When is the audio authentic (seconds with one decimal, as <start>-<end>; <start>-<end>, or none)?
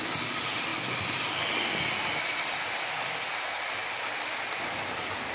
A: 0.0-5.3